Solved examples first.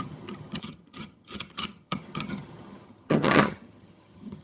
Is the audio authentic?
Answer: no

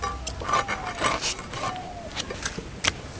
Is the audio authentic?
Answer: yes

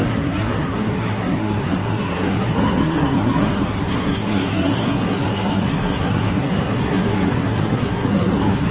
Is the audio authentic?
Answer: no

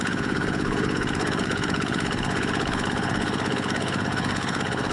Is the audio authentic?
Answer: no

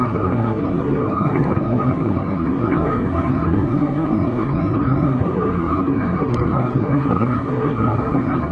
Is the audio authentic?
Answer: no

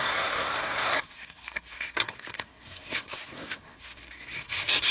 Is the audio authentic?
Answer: no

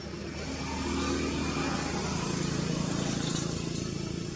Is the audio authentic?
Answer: yes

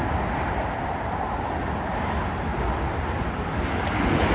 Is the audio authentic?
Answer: yes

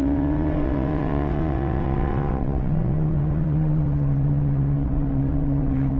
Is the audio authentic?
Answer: no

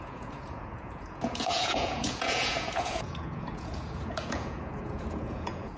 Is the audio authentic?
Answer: no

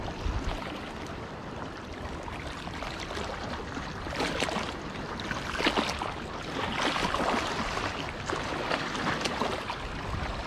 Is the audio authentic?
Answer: yes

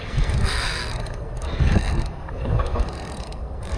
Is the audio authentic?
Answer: no